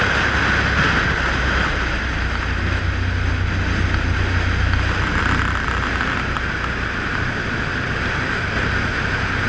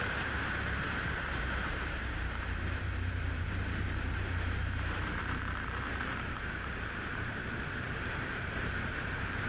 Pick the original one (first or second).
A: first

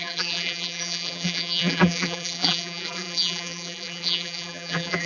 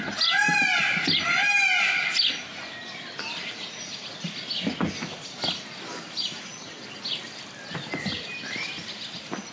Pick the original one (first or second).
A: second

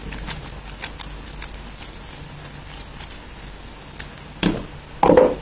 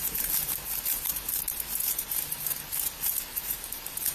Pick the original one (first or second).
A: first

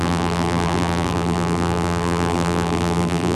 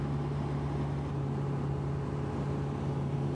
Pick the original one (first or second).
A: second